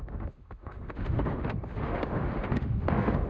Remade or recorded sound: remade